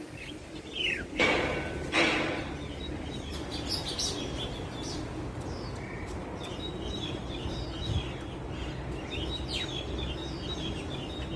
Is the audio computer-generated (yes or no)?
no